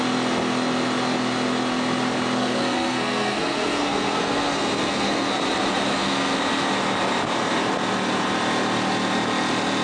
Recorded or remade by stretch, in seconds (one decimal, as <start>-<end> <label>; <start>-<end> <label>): 0.0-2.4 recorded; 2.4-5.3 remade; 5.3-5.9 recorded; 5.9-6.4 remade; 6.4-9.8 recorded

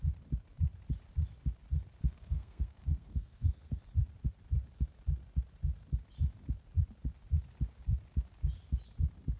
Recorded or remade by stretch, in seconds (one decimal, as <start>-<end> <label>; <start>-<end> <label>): 0.0-2.0 recorded; 2.0-3.8 remade; 3.8-9.4 recorded